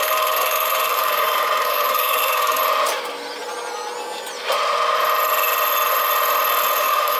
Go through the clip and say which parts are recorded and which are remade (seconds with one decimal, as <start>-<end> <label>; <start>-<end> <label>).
0.0-2.6 remade; 2.6-6.8 recorded; 6.8-7.2 remade